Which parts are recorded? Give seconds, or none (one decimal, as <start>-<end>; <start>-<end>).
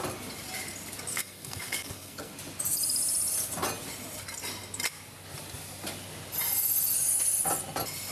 0.0-1.1; 2.3-8.1